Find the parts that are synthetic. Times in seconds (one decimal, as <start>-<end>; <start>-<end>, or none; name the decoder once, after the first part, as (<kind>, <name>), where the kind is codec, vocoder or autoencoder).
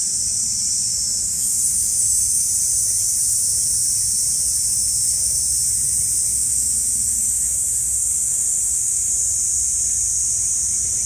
0.9-2.5 (autoencoder, DAC-VAE); 4.8-5.5; 6.3-9.1